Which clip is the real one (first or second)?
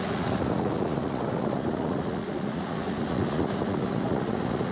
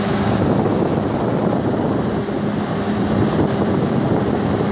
second